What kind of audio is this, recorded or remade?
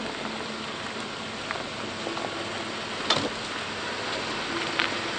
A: recorded